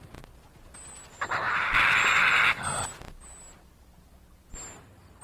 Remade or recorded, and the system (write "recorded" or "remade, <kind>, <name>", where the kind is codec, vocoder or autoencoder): recorded